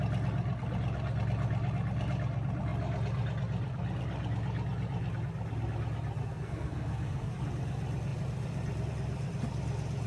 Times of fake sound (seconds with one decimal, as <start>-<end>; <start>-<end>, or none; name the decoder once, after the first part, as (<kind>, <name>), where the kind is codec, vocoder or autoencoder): 6.2-7.3 (codec, SNAC)